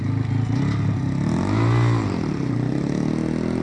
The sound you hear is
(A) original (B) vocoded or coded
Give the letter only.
A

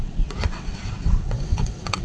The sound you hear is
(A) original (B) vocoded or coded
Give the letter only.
B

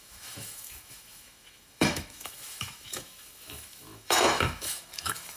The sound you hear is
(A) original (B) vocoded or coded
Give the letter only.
B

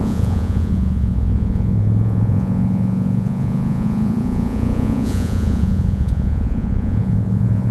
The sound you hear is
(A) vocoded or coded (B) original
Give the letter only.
A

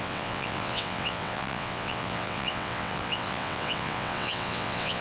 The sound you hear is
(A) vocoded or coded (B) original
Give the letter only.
A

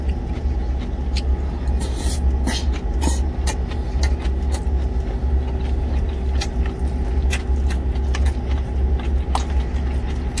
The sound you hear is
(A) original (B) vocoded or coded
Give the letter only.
A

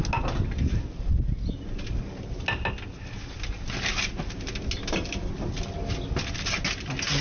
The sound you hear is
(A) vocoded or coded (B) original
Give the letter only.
B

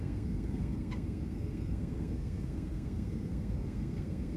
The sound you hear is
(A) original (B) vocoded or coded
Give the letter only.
B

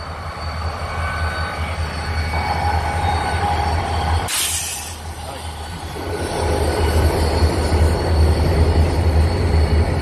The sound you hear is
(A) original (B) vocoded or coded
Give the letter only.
A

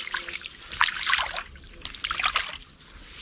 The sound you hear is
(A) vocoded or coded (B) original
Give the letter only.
B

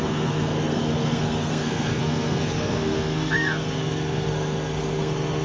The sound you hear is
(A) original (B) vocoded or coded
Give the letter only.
B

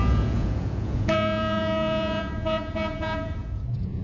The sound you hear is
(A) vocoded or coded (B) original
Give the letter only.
A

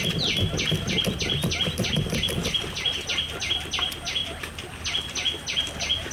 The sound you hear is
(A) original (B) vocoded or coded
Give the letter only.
A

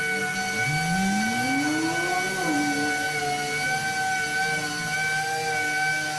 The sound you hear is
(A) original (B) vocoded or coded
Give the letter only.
A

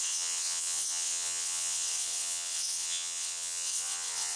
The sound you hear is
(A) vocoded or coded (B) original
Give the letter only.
A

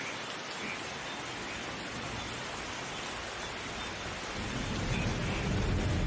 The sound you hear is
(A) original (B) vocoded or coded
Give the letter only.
A